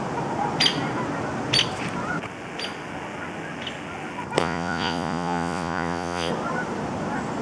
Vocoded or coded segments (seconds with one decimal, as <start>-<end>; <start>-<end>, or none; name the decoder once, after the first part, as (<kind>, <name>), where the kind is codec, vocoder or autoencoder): 4.4-6.3 (vocoder, Vocos)

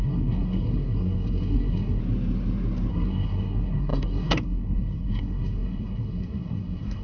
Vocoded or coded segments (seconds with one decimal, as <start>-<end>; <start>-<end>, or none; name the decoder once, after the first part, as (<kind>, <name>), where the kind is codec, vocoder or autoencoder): 0.0-2.0 (codec, SNAC); 2.9-7.0